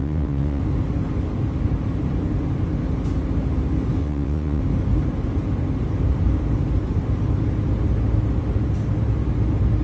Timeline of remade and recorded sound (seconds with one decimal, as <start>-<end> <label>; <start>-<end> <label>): 0.0-0.6 remade; 0.6-4.0 recorded; 4.0-4.6 remade; 4.6-9.8 recorded